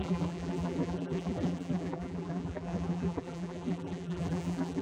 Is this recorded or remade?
remade